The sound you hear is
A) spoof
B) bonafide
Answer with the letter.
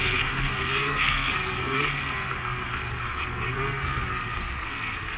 A